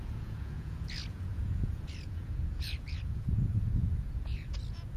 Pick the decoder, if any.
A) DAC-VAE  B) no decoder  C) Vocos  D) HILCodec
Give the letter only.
C